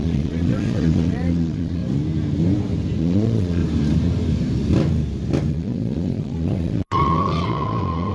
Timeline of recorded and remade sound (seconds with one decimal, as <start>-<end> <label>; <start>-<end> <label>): 0.0-1.8 remade; 1.8-3.0 recorded; 3.0-3.6 remade; 3.6-5.5 recorded; 5.5-8.1 remade